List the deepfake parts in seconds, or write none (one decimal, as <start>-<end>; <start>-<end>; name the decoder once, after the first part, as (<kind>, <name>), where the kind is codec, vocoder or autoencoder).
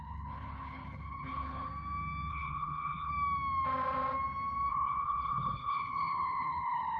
0.0-1.7 (codec, HILCodec); 2.3-3.1; 4.7-7.0